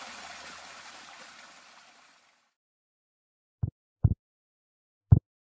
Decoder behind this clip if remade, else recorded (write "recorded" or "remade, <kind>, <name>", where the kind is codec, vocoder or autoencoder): recorded